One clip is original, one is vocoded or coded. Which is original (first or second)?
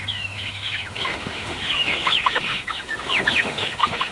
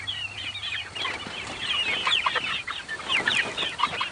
second